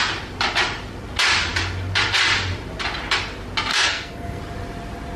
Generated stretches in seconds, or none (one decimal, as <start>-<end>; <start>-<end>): 3.7-4.4